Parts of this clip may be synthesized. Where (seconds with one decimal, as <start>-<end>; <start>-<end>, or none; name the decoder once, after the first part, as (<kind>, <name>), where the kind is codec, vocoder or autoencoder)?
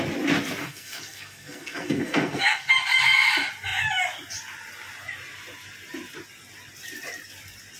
0.6-2.7 (codec, SNAC)